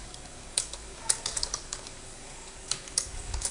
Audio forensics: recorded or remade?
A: remade